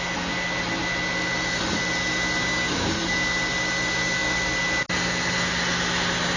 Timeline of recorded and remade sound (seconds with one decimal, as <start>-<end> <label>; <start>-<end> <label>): 0.0-2.4 recorded; 2.4-2.9 remade; 2.9-6.4 recorded